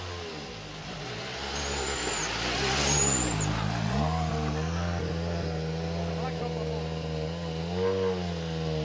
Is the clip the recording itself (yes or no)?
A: yes